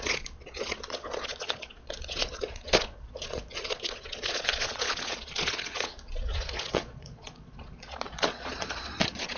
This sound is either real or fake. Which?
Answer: fake